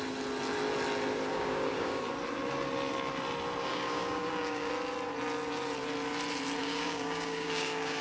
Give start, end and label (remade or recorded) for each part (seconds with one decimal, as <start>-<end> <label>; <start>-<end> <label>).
0.0-1.3 recorded; 1.3-2.0 remade; 2.0-3.7 recorded; 3.7-4.7 remade; 4.7-6.6 recorded; 6.6-8.0 remade